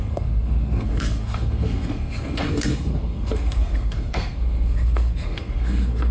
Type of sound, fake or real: fake